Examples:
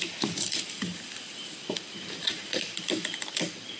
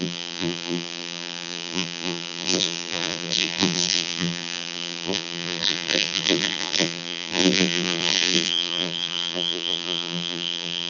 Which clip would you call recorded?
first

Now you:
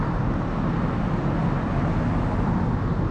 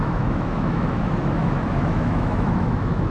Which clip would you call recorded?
first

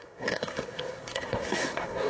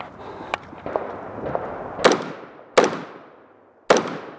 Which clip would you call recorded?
second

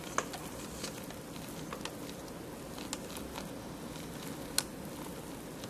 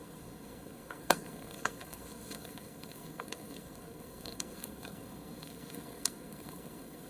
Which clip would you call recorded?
first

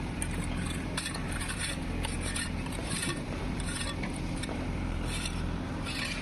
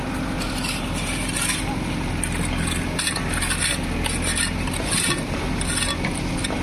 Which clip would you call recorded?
second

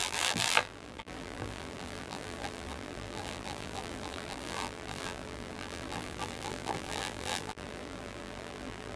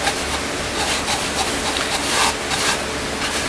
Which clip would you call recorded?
second